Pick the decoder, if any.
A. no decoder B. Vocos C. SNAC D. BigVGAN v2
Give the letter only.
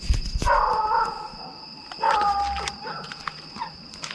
A